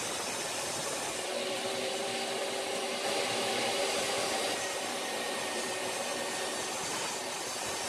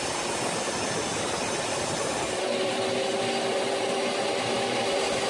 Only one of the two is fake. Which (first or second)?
first